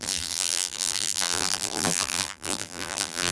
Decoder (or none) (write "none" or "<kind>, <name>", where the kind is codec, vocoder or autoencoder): vocoder, BigVGAN v2